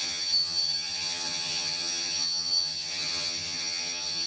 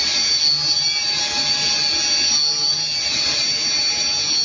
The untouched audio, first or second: second